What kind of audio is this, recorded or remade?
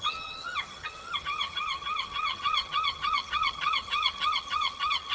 remade